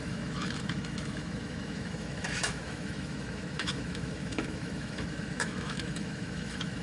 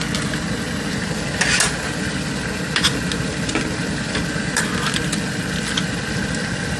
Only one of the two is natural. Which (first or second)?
second